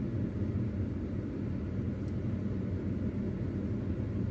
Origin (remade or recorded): recorded